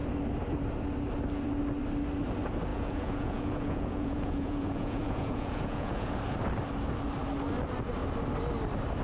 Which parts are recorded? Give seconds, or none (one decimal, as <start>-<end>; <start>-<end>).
0.0-2.7; 6.2-9.0